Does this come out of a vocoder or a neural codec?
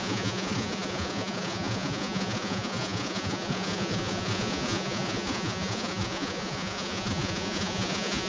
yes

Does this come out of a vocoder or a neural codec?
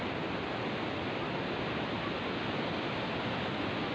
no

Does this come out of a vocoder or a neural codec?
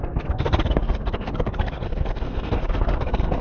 yes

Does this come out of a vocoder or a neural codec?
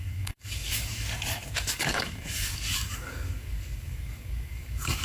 yes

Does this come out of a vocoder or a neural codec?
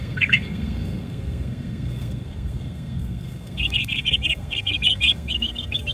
yes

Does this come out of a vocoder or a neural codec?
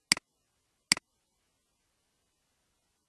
no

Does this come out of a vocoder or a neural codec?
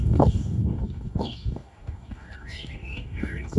yes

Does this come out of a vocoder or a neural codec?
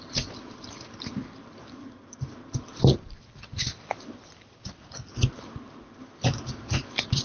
no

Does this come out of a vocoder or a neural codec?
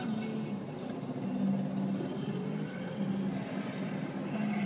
no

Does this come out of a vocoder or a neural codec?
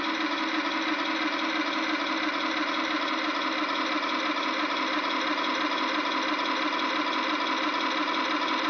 no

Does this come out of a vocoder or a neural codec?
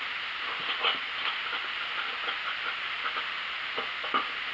no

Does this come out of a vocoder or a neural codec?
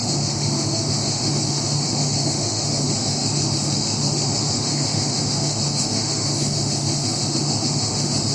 yes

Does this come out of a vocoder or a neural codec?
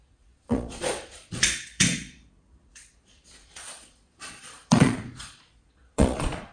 yes